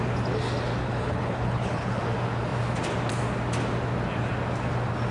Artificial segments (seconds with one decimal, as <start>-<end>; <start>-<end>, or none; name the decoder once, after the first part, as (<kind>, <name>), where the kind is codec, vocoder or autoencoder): 0.8-2.0 (codec, HILCodec)